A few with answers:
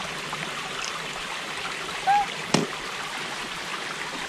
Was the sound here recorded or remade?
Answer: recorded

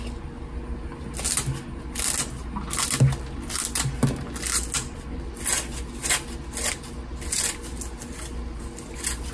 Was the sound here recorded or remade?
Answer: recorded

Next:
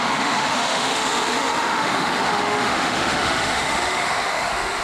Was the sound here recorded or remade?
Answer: remade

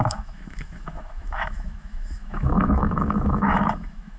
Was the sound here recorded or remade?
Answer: remade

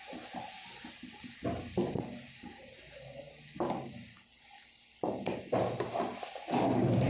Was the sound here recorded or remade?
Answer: recorded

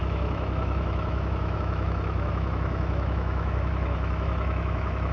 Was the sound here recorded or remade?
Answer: remade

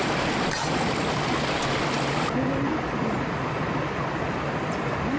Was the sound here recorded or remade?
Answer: recorded